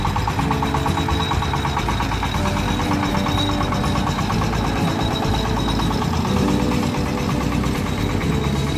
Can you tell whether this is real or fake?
real